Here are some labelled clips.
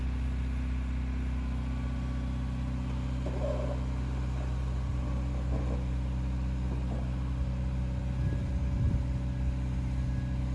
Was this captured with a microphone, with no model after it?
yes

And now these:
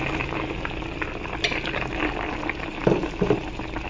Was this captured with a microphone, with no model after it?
yes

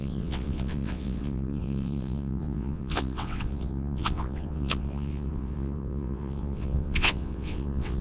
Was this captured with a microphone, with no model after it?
no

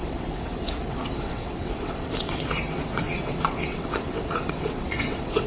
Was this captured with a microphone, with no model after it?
no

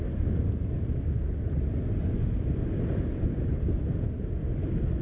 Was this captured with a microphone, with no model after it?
yes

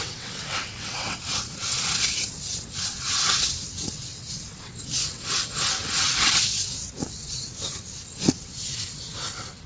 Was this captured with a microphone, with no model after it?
no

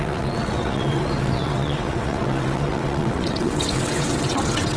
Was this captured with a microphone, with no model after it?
no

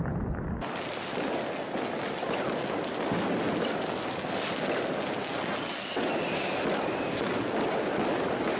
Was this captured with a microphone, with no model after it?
yes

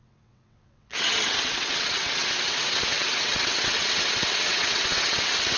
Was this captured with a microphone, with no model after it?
no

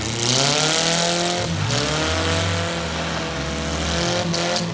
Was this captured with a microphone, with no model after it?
yes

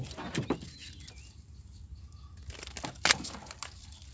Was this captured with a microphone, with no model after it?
yes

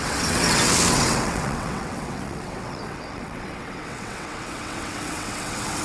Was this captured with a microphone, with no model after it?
no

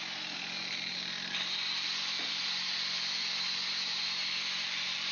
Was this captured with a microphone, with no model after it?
yes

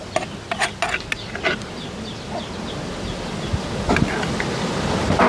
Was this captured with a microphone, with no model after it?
yes